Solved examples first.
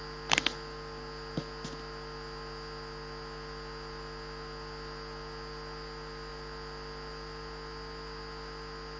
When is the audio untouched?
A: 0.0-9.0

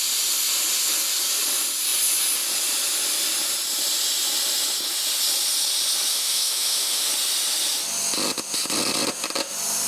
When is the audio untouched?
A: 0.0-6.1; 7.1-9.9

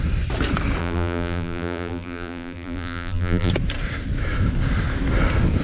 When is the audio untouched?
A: 0.0-0.8; 3.5-5.6

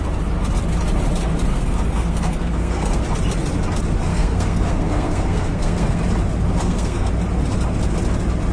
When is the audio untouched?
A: 0.0-1.5; 3.0-4.1; 6.0-6.6; 7.1-8.5

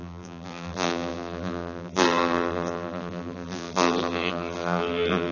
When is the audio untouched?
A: none

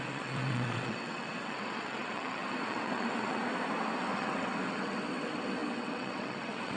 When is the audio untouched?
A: 3.4-4.0